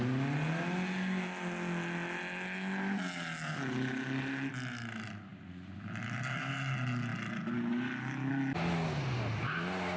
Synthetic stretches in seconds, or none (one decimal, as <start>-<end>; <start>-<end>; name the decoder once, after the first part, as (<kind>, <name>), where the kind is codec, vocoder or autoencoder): none